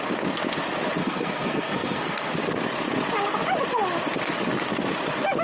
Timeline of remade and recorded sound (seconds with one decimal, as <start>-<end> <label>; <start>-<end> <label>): 0.0-1.0 recorded; 1.0-2.3 remade; 2.3-5.4 recorded